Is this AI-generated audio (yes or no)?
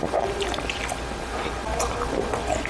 no